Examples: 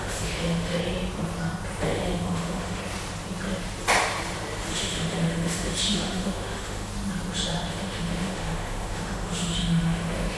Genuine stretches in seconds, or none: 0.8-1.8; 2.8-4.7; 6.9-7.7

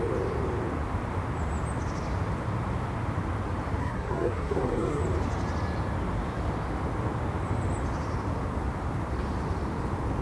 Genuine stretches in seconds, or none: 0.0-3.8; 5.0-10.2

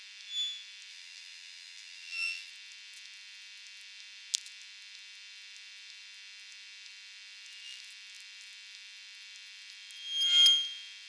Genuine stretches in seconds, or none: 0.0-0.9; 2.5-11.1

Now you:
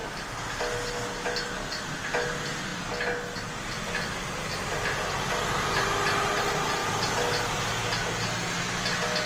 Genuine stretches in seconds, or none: 0.6-9.3

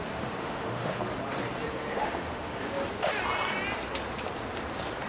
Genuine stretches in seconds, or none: 0.0-0.4; 1.0-1.8; 2.6-5.1

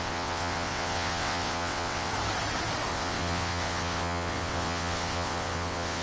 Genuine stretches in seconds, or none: 2.1-2.9